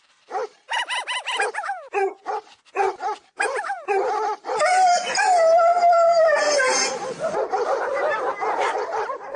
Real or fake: fake